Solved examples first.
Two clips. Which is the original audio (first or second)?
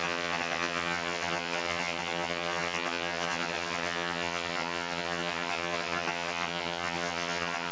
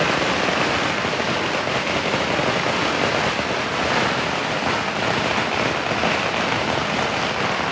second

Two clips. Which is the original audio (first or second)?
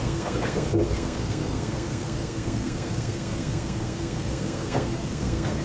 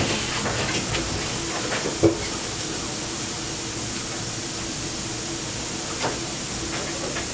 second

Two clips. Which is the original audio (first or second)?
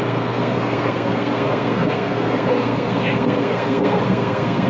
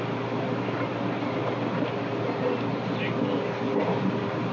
second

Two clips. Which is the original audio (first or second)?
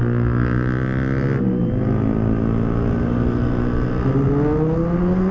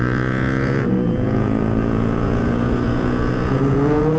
first